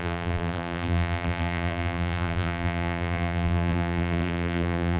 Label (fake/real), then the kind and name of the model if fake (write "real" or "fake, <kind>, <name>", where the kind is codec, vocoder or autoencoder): fake, vocoder, BigVGAN v2